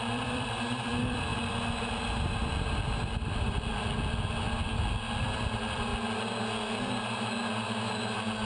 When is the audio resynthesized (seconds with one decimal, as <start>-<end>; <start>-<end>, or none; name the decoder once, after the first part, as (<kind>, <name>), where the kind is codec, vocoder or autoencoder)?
0.0-1.3 (vocoder, BigVGAN v2); 5.2-5.9